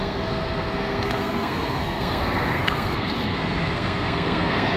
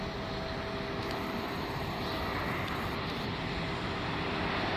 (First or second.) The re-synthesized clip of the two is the first